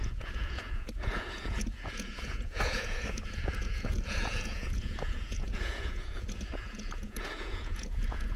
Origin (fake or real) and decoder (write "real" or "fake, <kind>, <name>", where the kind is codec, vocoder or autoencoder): fake, vocoder, Vocos